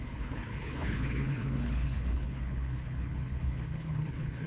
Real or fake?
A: fake